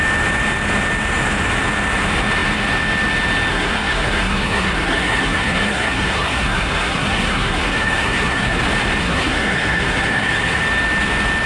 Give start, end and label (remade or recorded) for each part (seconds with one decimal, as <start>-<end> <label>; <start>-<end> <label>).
0.0-3.5 recorded; 3.5-8.6 remade; 8.6-9.0 recorded; 9.0-10.6 remade; 10.6-11.5 recorded

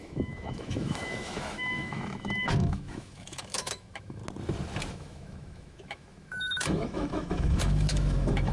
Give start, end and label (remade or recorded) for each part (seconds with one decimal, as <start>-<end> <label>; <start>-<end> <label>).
0.0-4.2 remade; 4.2-4.9 recorded; 4.9-8.5 remade

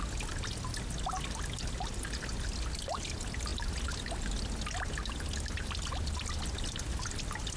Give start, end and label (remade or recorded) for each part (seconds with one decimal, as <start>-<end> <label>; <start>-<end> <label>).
0.0-7.6 recorded

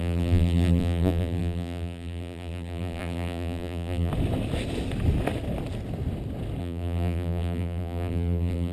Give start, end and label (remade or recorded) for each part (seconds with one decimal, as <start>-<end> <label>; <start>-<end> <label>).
0.0-4.1 remade; 4.1-6.6 recorded; 6.6-8.7 remade